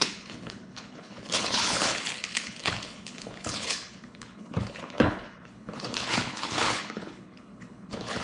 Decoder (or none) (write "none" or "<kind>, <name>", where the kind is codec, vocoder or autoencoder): codec, HILCodec